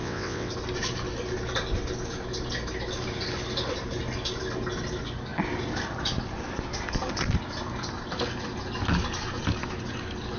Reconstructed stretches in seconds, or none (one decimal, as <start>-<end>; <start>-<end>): 0.0-0.5